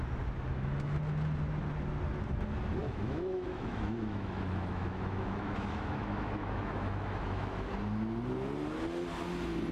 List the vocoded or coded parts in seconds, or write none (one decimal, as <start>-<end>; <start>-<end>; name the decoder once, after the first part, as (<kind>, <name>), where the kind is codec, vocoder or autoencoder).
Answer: 0.5-1.0 (autoencoder, DAC-VAE); 2.8-7.7